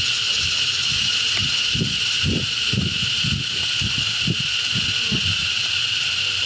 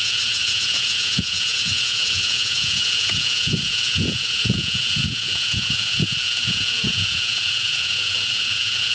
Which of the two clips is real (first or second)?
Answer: first